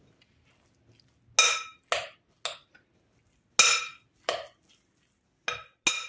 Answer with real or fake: real